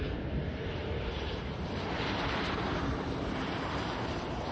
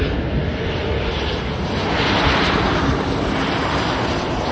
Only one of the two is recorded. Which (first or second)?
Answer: second